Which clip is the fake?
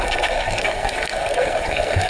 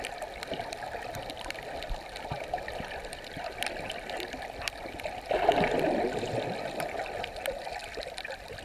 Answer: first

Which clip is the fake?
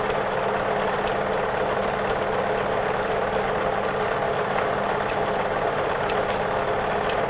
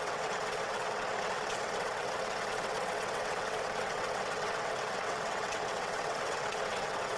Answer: second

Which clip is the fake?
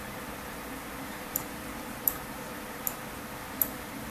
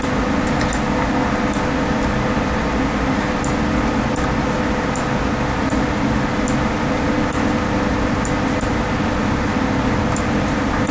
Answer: first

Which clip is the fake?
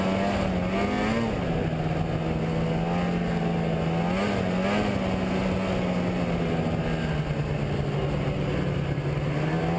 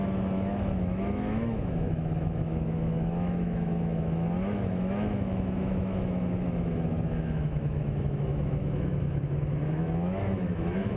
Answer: second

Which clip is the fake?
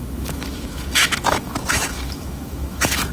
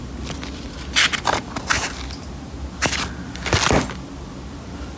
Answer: first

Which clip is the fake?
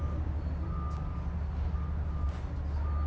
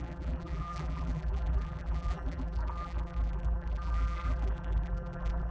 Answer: second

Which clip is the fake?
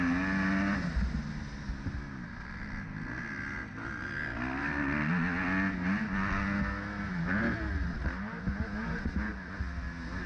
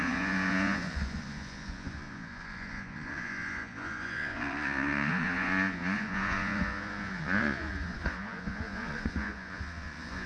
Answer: second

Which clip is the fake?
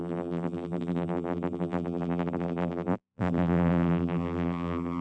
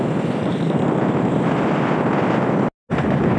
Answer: first